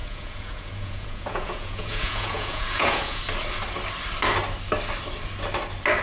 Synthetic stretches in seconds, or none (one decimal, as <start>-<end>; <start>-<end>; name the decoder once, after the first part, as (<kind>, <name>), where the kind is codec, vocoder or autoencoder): 0.0-3.2 (vocoder, Vocos)